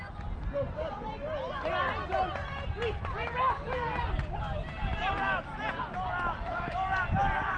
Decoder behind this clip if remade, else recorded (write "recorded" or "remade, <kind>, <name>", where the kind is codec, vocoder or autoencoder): recorded